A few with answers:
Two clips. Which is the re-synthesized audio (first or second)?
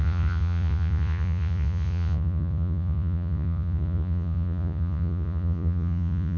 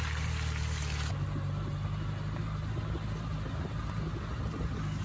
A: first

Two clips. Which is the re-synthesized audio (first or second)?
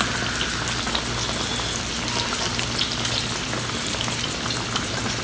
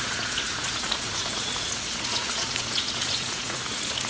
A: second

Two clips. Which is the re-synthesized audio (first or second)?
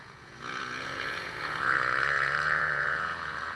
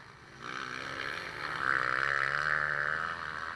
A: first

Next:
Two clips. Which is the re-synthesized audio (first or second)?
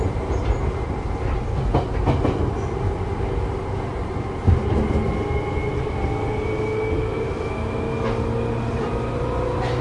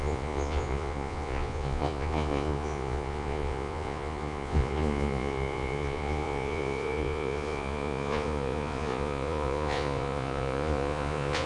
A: second